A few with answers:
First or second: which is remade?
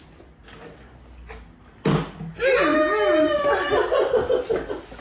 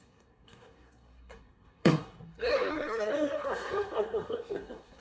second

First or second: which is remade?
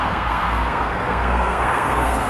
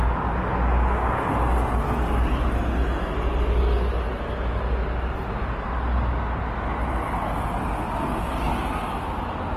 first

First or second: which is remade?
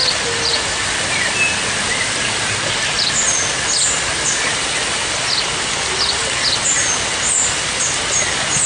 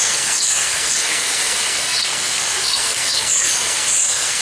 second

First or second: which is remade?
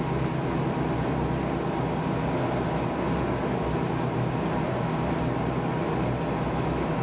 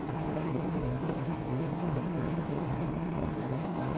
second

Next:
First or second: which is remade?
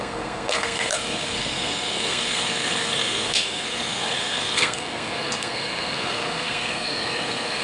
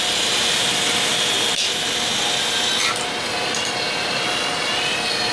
first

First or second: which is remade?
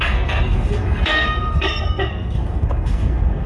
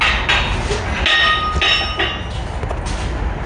first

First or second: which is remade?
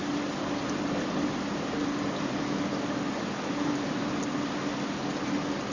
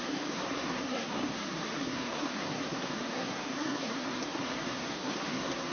second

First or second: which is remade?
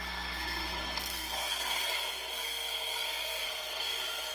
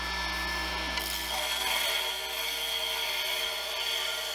first